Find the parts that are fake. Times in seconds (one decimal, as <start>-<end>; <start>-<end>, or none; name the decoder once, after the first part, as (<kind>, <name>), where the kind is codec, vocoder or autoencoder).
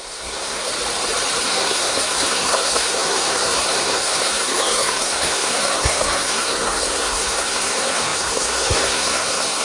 0.0-0.7 (codec, SNAC); 1.4-9.6